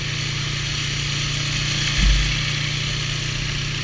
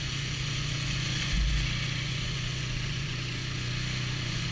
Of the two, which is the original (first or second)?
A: first